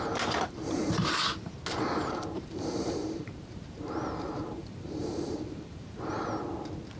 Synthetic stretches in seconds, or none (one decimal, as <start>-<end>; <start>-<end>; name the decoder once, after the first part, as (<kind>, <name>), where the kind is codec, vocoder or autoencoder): 2.0-6.2 (vocoder, BigVGAN v2)